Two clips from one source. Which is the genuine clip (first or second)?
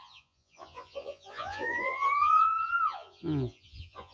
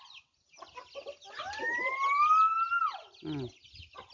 second